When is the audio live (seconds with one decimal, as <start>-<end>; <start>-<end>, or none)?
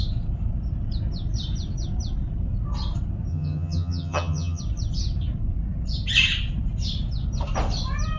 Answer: 0.0-3.3; 4.6-8.2